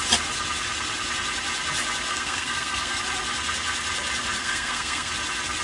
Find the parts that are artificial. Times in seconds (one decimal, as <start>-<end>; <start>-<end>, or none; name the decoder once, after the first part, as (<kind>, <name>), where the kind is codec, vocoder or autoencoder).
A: 2.1-3.0 (codec, SNAC); 4.4-5.1